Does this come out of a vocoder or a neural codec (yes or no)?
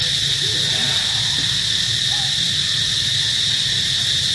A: no